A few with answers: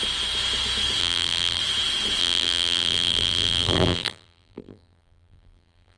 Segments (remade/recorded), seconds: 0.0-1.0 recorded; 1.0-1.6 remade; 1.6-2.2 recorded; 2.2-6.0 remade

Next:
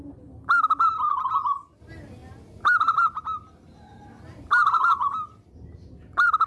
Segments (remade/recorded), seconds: 0.0-2.2 recorded; 2.2-3.9 remade; 3.9-6.5 recorded

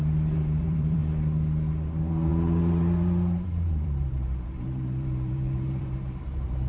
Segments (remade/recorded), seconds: 0.0-1.0 remade; 1.0-1.9 recorded; 1.9-6.7 remade

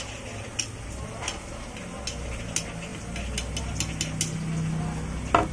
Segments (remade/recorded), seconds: 0.0-5.5 recorded

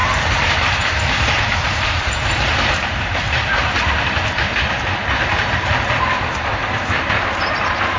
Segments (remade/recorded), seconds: 0.0-4.2 remade; 4.2-5.2 recorded; 5.2-7.3 remade; 7.3-8.0 recorded

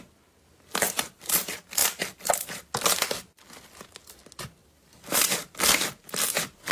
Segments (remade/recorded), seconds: 0.0-4.6 recorded; 4.6-5.6 remade; 5.6-6.7 recorded

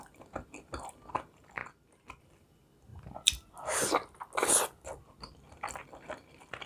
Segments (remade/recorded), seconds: 0.0-2.9 recorded; 2.9-3.5 remade; 3.5-6.7 recorded

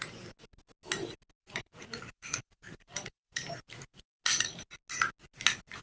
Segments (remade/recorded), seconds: 0.0-1.4 recorded; 1.4-3.5 remade; 3.5-5.8 recorded